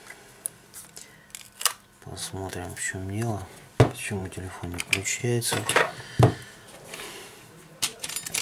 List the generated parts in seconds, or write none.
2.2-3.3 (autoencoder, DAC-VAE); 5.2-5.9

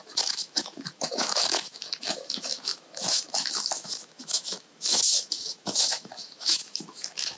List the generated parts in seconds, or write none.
0.0-7.4 (autoencoder, DAC-VAE)